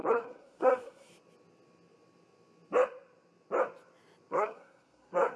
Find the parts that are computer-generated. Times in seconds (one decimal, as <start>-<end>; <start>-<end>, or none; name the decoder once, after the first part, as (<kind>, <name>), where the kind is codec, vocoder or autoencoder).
0.0-1.1 (codec, SNAC); 4.3-5.4